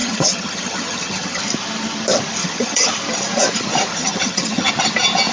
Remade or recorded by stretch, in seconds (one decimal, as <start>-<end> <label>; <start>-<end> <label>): 0.0-1.4 remade; 1.4-2.4 recorded; 2.4-2.9 remade; 2.9-3.9 recorded; 3.9-4.7 remade; 4.7-5.3 recorded